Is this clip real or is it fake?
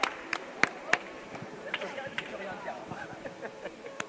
fake